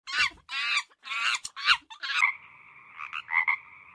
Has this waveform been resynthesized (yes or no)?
no